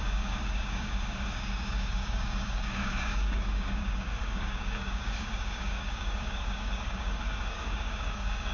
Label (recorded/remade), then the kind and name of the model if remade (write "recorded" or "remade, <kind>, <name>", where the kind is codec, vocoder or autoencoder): remade, codec, DAC